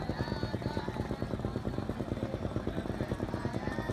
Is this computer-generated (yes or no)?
no